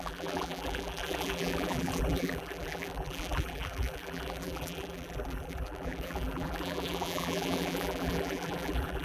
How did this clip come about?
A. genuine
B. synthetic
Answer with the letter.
B